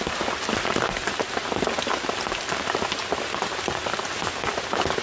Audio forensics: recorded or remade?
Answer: recorded